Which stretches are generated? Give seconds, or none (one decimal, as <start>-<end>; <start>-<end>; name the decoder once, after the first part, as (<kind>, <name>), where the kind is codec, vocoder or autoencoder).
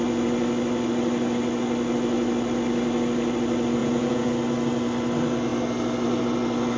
3.8-4.3 (vocoder, Vocos)